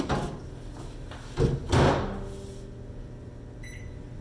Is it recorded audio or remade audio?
recorded